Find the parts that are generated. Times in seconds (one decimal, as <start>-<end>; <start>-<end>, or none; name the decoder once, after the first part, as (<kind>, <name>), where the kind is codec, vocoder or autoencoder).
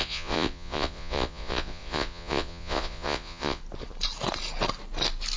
0.0-3.6 (vocoder, Vocos)